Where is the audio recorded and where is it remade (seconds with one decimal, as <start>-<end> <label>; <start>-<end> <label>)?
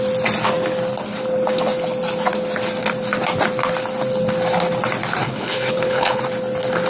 0.0-5.2 recorded; 5.2-6.2 remade; 6.2-6.9 recorded